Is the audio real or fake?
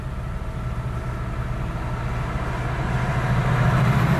real